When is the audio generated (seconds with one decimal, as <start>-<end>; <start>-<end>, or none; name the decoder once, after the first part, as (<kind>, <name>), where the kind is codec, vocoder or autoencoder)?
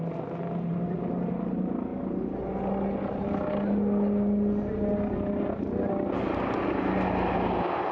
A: none